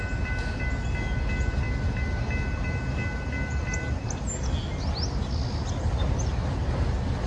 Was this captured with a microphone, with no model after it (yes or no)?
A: yes